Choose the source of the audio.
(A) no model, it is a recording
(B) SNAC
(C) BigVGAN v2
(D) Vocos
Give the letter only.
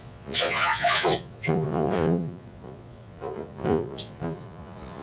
D